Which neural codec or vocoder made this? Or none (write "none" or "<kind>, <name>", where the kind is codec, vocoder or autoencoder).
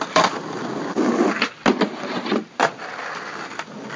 none